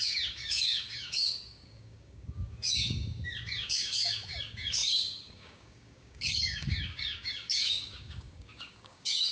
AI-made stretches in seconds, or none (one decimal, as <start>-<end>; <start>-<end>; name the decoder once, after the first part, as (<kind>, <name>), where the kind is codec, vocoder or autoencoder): 0.0-9.3 (codec, DAC)